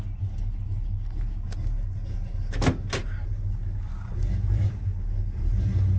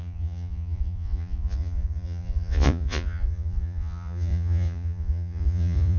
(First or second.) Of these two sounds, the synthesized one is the second